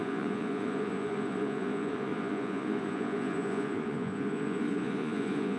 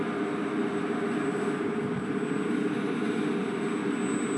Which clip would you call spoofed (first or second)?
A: first